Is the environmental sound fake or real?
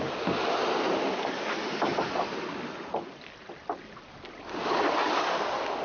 real